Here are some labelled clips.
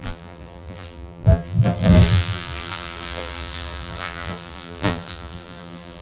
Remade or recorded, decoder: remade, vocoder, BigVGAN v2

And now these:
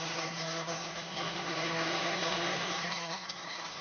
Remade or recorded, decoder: remade, codec, SNAC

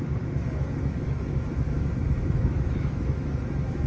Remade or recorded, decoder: remade, autoencoder, DAC-VAE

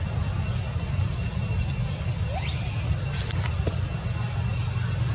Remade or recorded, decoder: recorded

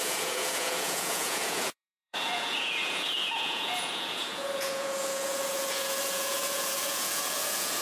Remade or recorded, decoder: remade, vocoder, Vocos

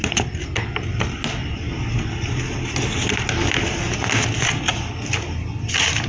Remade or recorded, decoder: recorded